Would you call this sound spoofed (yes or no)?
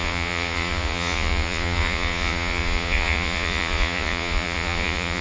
yes